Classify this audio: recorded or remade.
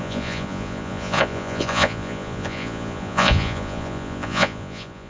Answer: remade